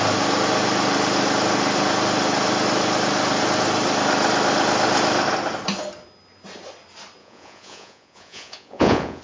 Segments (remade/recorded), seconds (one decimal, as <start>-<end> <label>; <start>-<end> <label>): 0.0-7.2 recorded; 7.2-9.2 remade

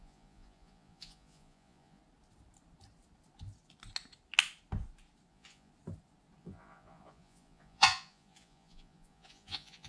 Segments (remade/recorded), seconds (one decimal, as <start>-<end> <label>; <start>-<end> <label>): 0.0-2.0 remade; 2.0-5.3 recorded; 5.3-5.7 remade; 5.7-6.4 recorded; 6.4-9.9 remade

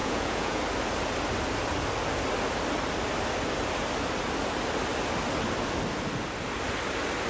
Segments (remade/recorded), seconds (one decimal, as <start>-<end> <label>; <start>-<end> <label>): 0.0-0.6 remade; 0.6-7.3 recorded

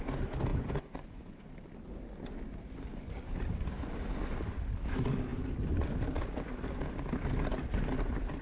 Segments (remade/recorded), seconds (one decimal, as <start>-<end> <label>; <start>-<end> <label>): 0.0-0.5 recorded; 0.5-1.5 remade; 1.5-8.4 recorded

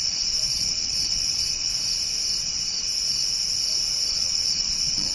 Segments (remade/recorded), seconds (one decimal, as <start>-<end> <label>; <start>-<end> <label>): 0.0-1.7 remade; 1.7-2.4 recorded; 2.4-2.9 remade; 2.9-4.1 recorded; 4.1-5.1 remade

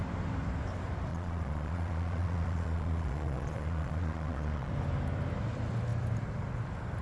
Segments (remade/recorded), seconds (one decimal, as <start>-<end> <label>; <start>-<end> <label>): 0.0-1.1 recorded; 1.1-4.7 remade; 4.7-7.0 recorded